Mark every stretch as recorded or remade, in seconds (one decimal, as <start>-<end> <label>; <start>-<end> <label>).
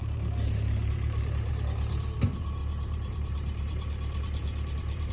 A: 0.0-1.5 remade; 1.5-2.6 recorded; 2.6-5.1 remade